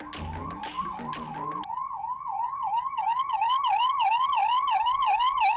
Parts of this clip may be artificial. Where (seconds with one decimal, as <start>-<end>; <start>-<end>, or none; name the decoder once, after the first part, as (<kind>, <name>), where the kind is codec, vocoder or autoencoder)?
none